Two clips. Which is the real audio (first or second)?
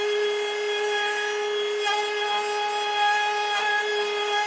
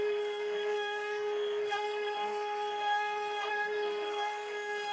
first